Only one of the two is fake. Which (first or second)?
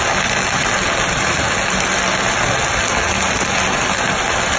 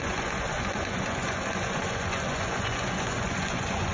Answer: second